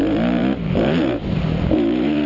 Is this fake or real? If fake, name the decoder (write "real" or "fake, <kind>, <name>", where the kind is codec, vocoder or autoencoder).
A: fake, vocoder, BigVGAN v2